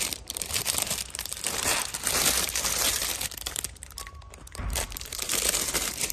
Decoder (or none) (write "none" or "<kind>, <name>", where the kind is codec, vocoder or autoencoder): vocoder, BigVGAN v2